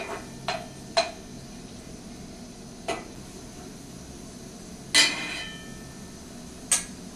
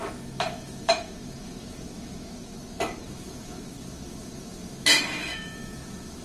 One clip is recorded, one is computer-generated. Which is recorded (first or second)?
first